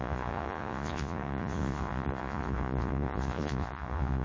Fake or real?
fake